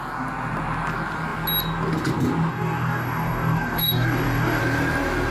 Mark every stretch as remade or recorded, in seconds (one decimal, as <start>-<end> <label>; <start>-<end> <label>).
0.0-2.5 recorded; 2.5-4.6 remade; 4.6-5.3 recorded